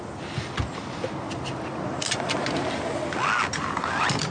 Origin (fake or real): real